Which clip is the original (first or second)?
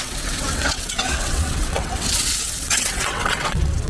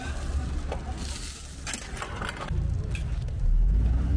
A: second